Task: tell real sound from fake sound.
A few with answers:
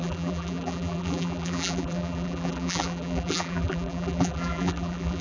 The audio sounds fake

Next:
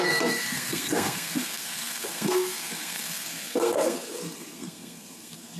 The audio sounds fake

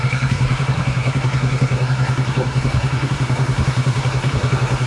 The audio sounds fake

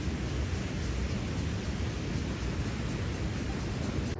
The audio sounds real